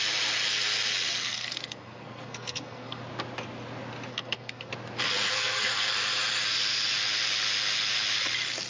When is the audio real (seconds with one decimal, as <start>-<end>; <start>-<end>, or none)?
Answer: 0.0-1.2; 3.0-4.1; 4.7-5.3; 5.9-8.7